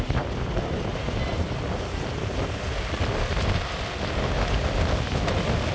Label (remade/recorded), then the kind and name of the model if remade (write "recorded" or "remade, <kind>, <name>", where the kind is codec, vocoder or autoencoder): recorded